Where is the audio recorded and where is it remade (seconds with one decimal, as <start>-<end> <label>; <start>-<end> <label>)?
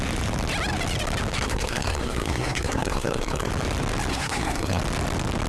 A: 0.0-1.3 recorded; 1.3-3.5 remade; 3.5-4.1 recorded; 4.1-4.8 remade; 4.8-5.5 recorded